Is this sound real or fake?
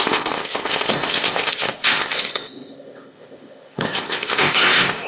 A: fake